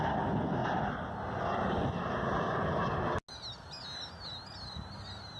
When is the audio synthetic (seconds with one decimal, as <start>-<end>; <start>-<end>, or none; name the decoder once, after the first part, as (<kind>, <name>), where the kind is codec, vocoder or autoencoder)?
none